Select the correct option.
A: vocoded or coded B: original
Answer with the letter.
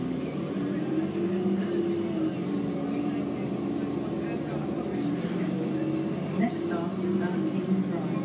B